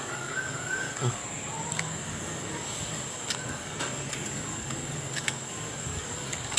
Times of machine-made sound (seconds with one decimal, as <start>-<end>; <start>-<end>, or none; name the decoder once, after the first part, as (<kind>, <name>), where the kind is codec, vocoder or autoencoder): 0.0-1.2 (codec, DAC); 1.7-6.6